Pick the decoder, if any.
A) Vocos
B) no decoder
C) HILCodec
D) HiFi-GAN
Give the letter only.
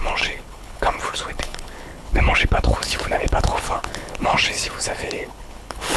C